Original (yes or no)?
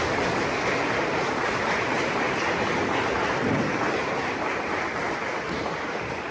yes